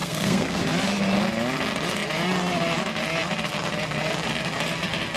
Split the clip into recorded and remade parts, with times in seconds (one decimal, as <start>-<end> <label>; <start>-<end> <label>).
0.0-0.6 remade; 0.6-5.2 recorded